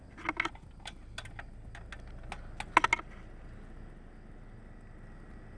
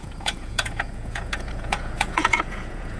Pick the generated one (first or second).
second